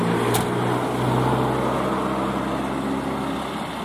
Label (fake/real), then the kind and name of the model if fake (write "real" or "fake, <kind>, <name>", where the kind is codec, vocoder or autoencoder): real